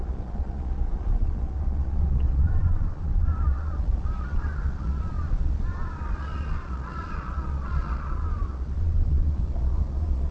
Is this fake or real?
fake